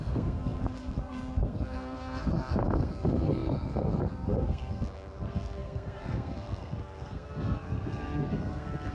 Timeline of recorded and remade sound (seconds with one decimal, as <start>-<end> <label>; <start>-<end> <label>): 0.0-8.9 remade